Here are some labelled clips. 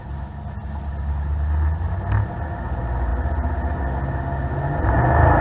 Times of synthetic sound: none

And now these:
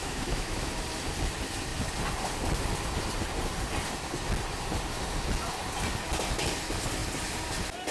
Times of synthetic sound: 0.0-0.7 (autoencoder, DAC-VAE)

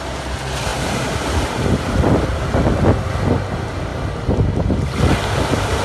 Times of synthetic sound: 3.9-4.8 (vocoder, BigVGAN v2)

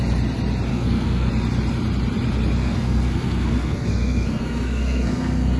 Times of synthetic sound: 0.7-1.3 (codec, SNAC); 2.6-5.6

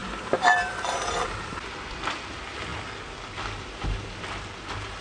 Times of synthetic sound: 0.0-2.2 (vocoder, BigVGAN v2)

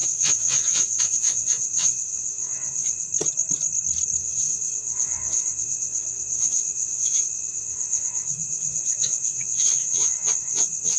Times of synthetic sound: 0.0-3.1 (vocoder, WaveNeXt); 4.2-11.0

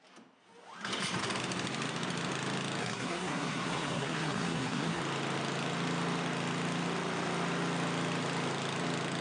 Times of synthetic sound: 2.8-5.0 (codec, SNAC)